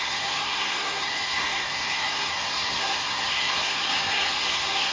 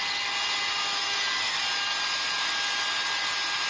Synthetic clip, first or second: first